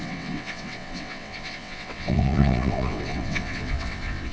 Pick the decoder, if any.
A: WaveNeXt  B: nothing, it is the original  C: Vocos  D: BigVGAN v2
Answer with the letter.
A